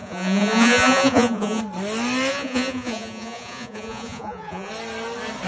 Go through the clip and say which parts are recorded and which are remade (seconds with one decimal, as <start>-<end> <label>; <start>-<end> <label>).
0.0-1.6 remade; 1.6-2.3 recorded; 2.3-4.7 remade; 4.7-5.5 recorded